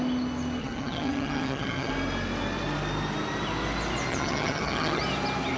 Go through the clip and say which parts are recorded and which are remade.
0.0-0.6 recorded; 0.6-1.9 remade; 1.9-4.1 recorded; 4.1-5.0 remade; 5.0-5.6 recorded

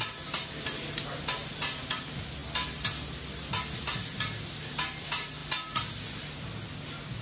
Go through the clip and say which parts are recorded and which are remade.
0.0-7.2 recorded

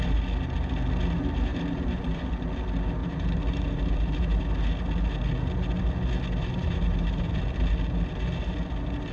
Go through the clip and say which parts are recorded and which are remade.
0.0-1.5 recorded; 1.5-2.3 remade; 2.3-3.0 recorded; 3.0-4.4 remade; 4.4-6.4 recorded; 6.4-7.4 remade; 7.4-9.1 recorded

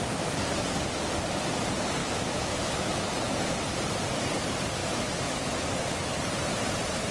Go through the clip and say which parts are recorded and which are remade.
0.0-2.0 recorded; 2.0-3.0 remade; 3.0-4.8 recorded; 4.8-5.4 remade; 5.4-7.1 recorded

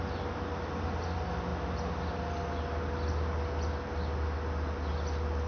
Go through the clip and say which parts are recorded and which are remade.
0.0-5.5 recorded